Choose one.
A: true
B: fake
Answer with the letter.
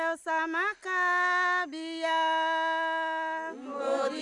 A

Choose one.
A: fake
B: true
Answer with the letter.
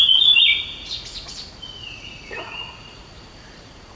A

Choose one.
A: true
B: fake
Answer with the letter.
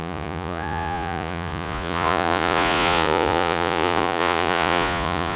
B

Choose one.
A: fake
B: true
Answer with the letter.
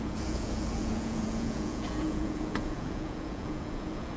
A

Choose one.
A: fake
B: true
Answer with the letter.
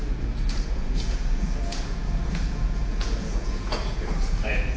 A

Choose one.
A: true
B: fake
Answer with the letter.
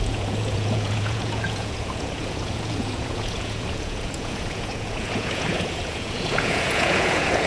B